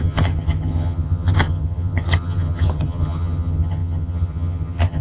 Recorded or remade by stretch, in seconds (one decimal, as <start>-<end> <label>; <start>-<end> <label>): 0.0-5.0 remade